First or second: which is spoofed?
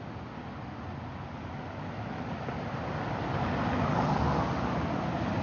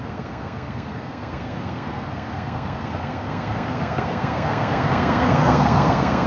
second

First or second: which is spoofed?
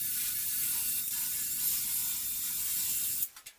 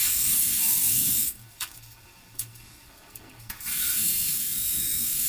second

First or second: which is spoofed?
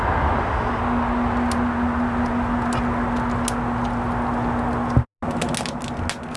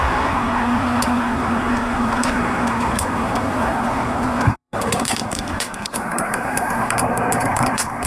second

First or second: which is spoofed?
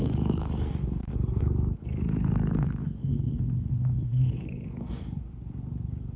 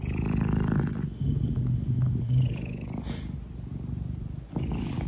first